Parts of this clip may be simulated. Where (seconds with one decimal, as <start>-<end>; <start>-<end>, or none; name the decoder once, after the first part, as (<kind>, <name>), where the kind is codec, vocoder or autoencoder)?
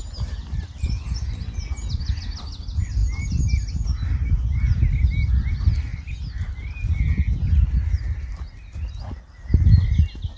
none